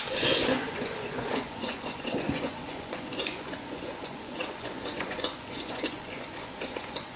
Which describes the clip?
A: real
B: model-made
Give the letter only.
B